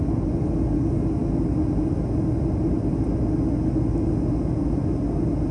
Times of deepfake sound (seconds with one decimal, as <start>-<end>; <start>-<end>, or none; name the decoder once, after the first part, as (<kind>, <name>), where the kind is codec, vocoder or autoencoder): none